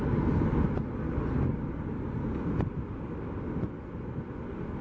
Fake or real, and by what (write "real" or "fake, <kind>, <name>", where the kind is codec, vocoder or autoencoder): real